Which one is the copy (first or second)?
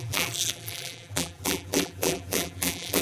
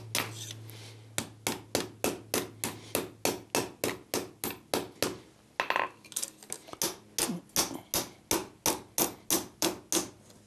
first